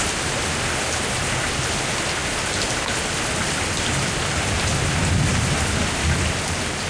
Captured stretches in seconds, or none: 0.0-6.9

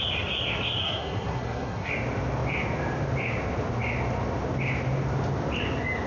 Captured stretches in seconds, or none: 0.0-0.8; 1.9-6.1